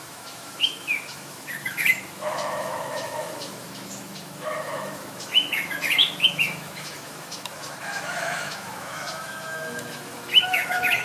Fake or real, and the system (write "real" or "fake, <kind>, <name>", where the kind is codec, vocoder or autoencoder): fake, autoencoder, DAC-VAE